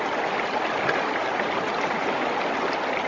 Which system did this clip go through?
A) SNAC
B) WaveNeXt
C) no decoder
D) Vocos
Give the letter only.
C